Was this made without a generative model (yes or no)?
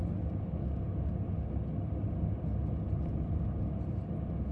yes